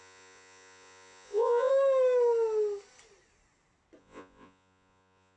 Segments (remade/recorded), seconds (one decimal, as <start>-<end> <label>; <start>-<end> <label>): 0.0-1.7 remade; 1.7-4.0 recorded; 4.0-5.4 remade